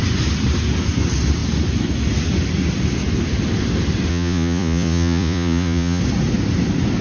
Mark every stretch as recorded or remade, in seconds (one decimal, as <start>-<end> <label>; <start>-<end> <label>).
0.0-4.1 recorded; 4.1-6.0 remade; 6.0-7.0 recorded